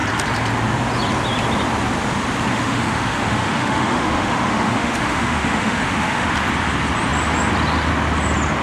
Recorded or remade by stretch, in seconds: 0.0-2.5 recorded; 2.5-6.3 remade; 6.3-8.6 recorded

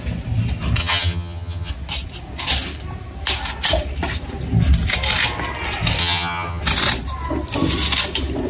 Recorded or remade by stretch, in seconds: 0.0-0.8 recorded; 0.8-1.7 remade; 1.7-6.0 recorded; 6.0-6.6 remade; 6.6-8.5 recorded

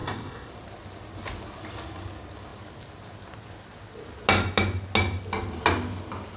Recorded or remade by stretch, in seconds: 0.0-0.5 remade; 0.5-6.4 recorded

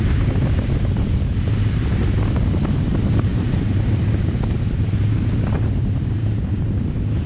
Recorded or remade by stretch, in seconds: 0.0-2.0 remade; 2.0-2.9 recorded; 2.9-7.3 remade

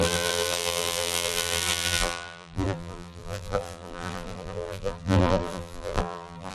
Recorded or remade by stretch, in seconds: 0.0-6.5 remade